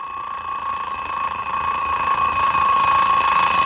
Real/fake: real